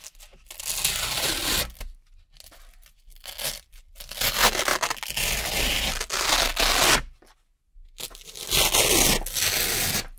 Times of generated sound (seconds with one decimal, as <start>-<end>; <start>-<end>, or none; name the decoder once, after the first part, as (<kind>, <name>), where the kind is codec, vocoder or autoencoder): none